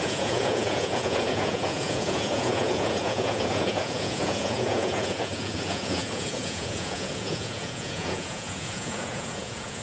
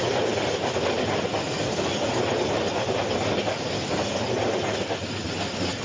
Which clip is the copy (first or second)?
first